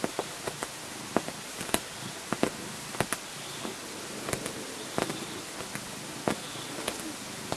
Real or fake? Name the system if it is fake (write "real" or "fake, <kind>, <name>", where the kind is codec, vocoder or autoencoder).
real